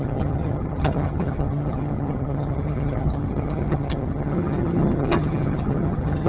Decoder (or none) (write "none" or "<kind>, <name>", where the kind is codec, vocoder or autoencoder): vocoder, HiFi-GAN